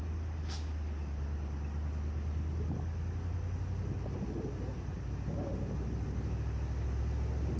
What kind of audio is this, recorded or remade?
recorded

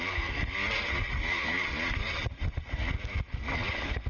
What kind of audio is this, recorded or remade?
recorded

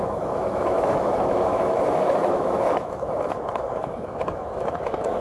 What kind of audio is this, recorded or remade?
remade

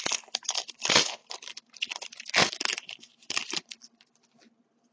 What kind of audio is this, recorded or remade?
recorded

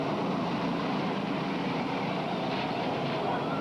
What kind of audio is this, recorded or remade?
recorded